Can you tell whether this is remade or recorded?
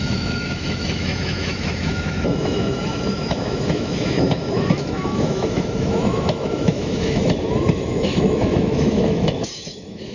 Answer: remade